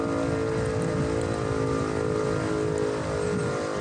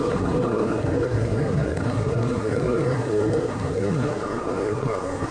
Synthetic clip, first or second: second